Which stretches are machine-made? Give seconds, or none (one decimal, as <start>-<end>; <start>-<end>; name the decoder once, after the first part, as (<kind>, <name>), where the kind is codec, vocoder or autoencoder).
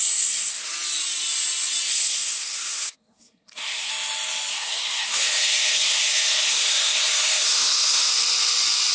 0.0-0.7 (codec, SNAC); 1.9-3.9; 4.5-8.1